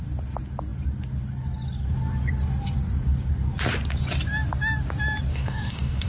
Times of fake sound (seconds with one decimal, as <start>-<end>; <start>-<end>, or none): 5.3-6.1